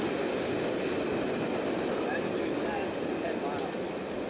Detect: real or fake real